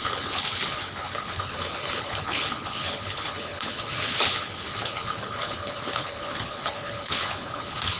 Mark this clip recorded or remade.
remade